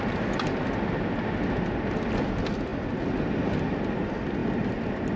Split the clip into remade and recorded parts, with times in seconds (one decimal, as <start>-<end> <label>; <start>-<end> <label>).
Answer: 0.0-5.2 recorded